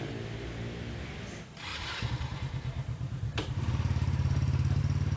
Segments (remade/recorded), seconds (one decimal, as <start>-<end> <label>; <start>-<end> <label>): 0.0-1.7 recorded; 1.7-4.8 remade; 4.8-5.2 recorded